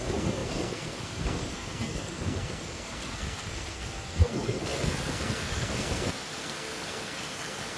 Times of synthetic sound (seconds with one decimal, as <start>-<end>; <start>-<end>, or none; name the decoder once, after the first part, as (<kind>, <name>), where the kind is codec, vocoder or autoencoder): 0.0-7.8 (codec, SNAC)